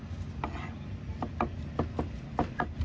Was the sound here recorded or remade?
recorded